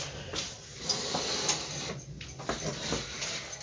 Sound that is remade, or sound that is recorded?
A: recorded